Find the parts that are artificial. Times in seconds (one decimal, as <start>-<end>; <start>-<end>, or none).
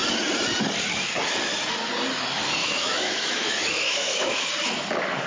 2.6-4.5